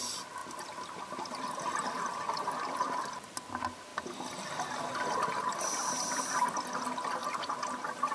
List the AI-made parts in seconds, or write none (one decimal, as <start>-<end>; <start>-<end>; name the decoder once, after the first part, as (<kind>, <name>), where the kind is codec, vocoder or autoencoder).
none

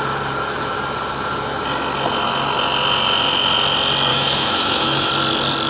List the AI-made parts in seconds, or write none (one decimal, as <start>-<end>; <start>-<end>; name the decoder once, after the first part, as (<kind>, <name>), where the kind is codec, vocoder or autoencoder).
4.1-5.1 (autoencoder, DAC-VAE)

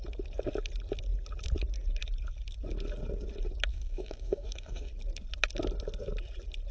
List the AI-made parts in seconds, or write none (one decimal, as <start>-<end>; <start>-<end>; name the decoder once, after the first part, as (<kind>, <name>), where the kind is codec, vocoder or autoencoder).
3.7-4.9 (codec, DAC)

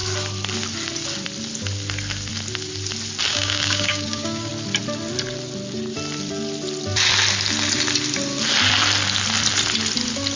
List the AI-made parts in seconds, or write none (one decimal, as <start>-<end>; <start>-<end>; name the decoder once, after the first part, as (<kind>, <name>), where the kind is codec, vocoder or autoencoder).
3.3-4.5 (codec, DAC)